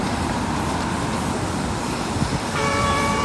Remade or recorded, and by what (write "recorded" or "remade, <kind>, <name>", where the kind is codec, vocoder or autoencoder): remade, vocoder, BigVGAN v2